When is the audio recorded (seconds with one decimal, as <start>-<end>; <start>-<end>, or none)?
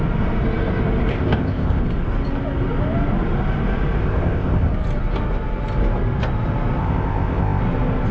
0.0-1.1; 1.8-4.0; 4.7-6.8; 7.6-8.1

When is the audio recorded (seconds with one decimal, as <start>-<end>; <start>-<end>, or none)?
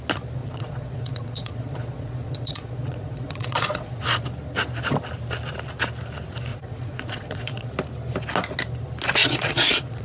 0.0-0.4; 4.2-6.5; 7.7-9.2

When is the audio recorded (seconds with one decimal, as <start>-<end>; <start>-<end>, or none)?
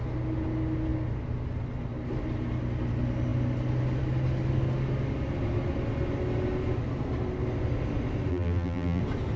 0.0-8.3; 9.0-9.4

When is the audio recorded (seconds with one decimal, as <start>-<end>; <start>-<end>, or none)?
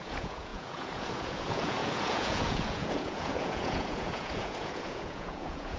none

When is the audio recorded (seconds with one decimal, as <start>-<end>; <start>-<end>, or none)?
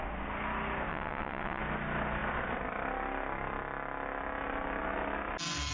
0.0-0.9; 1.6-5.7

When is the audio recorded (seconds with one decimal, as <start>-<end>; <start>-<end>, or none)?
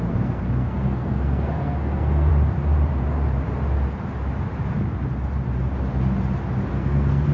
2.3-6.7